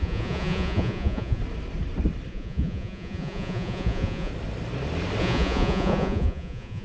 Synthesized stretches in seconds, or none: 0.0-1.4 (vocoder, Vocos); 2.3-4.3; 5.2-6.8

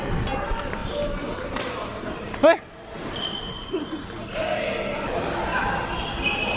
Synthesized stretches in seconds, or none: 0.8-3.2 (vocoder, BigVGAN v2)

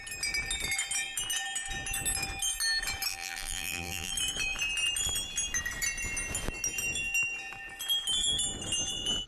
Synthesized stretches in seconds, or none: 3.1-4.1 (vocoder, BigVGAN v2)

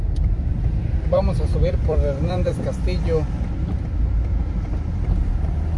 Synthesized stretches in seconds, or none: 0.5-2.5 (vocoder, BigVGAN v2); 3.6-5.3

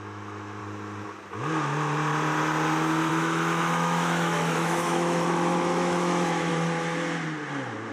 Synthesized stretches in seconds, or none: 0.0-0.6 (autoencoder, DAC-VAE); 3.1-6.5

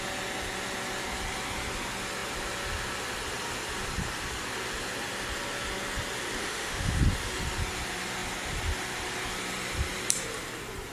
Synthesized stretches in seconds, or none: 6.4-7.0 (autoencoder, DAC-VAE)

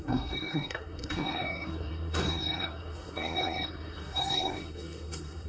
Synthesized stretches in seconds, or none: 0.0-5.5 (codec, SNAC)

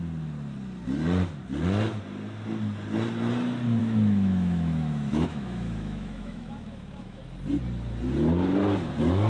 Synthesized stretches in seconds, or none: 3.8-7.2 (autoencoder, DAC-VAE)